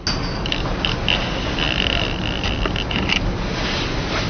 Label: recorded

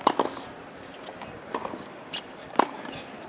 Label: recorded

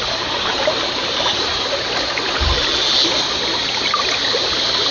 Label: recorded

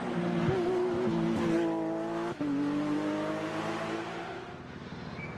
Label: recorded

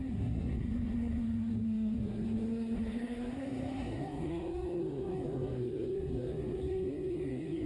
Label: remade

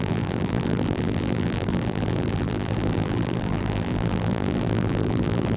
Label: remade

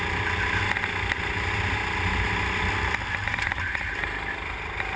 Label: recorded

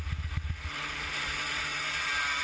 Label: recorded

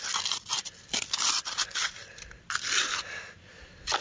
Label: recorded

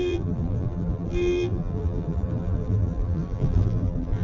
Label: remade